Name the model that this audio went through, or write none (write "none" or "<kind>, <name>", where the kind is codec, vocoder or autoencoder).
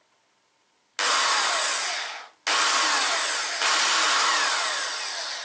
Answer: none